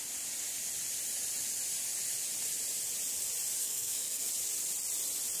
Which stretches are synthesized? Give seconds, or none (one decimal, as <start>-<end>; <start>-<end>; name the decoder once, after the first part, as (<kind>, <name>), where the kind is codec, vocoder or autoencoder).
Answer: 3.6-4.3 (codec, SNAC)